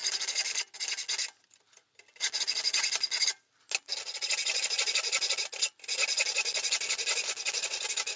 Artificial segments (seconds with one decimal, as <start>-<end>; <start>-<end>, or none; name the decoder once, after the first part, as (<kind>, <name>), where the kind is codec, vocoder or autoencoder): none